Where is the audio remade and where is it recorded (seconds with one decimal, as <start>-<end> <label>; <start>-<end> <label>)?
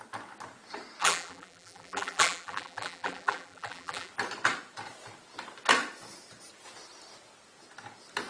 0.0-1.0 recorded; 1.0-4.1 remade; 4.1-8.3 recorded